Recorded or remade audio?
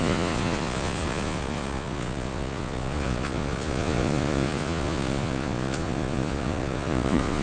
remade